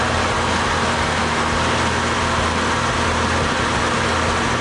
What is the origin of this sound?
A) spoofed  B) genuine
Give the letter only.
B